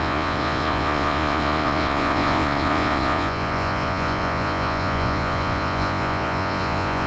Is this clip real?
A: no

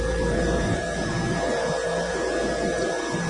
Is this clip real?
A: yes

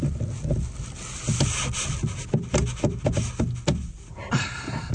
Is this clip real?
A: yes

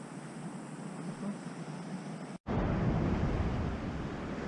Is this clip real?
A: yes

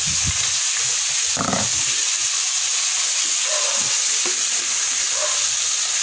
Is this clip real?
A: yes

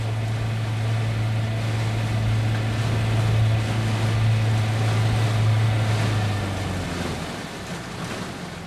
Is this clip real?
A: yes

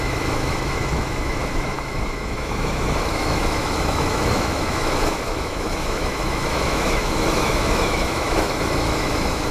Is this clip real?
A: no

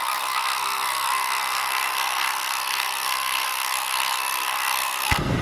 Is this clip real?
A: no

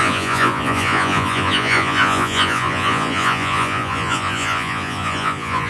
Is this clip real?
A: no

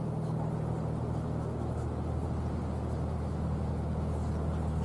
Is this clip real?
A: yes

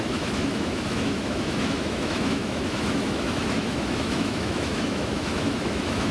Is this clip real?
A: no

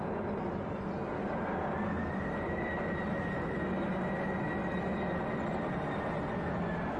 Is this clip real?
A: yes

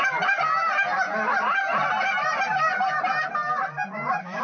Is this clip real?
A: yes